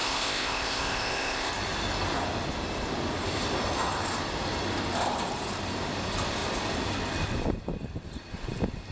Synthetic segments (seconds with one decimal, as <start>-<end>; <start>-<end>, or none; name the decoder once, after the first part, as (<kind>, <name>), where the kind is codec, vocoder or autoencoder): 0.0-1.5 (codec, ZipCodec)